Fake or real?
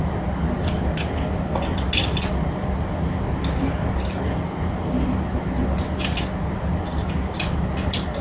real